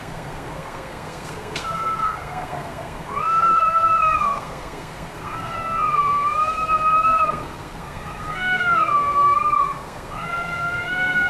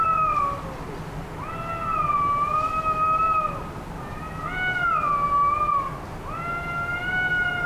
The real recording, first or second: second